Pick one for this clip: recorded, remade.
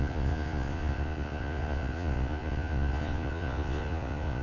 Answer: remade